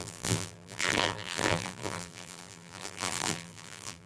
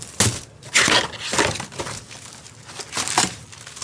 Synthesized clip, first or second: first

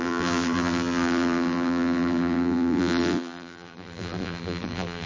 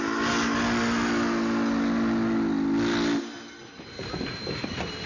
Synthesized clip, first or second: first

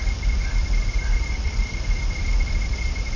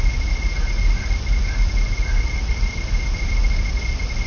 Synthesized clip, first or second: first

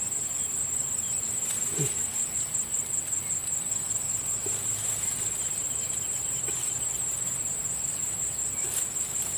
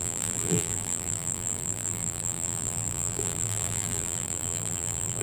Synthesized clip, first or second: second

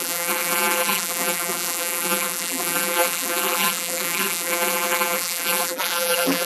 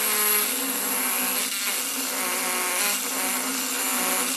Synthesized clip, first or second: first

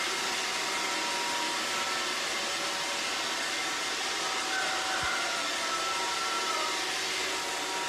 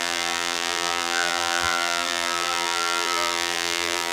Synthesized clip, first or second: second